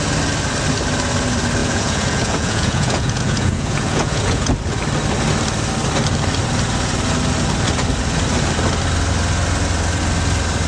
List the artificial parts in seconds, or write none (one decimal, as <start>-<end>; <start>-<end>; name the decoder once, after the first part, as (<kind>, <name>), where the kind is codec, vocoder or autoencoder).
1.6-4.5 (vocoder, Vocos)